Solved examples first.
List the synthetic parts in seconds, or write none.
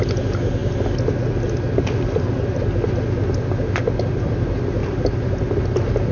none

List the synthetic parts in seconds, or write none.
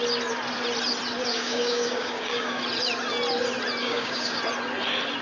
1.3-2.6 (codec, DAC); 3.8-4.4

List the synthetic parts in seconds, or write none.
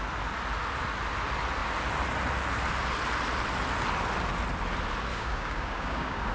5.1-6.3 (codec, DAC)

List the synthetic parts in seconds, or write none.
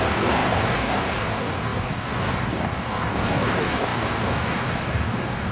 0.0-5.5 (codec, DAC)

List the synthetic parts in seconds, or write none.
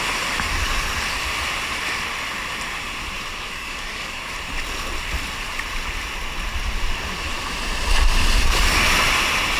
3.3-4.3 (codec, DAC)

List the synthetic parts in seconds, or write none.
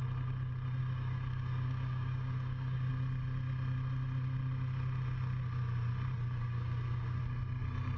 0.8-2.9 (codec, DAC); 6.4-7.2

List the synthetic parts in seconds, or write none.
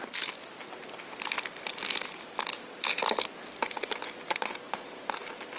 none